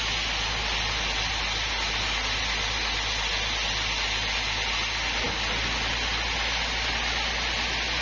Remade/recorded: recorded